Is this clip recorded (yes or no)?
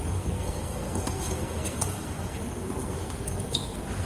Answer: no